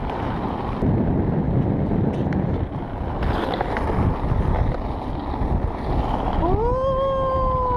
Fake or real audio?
real